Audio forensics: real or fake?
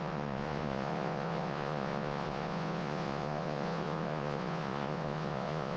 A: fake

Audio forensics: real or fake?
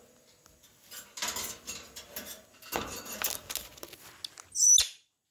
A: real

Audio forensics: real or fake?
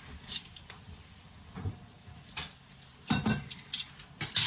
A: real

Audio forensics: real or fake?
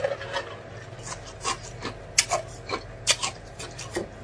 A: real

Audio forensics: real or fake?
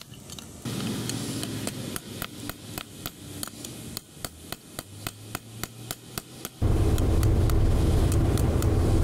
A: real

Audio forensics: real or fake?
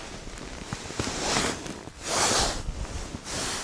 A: real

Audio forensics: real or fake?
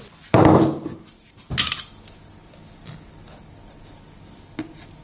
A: real